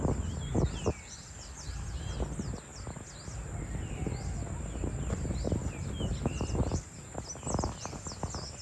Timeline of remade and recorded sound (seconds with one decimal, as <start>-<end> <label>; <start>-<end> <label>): 0.0-8.6 recorded